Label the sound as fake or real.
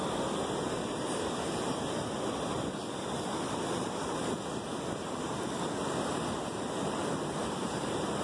real